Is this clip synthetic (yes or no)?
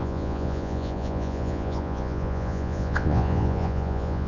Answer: yes